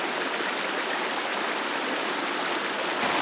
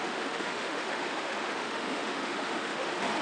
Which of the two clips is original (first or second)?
first